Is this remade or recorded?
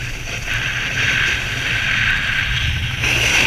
recorded